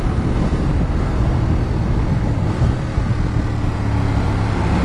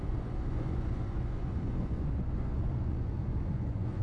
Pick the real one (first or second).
first